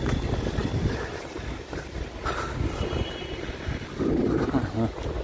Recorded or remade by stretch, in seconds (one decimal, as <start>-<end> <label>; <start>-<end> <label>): 0.0-5.2 recorded